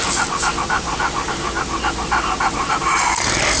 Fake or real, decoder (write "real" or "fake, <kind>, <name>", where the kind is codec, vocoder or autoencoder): real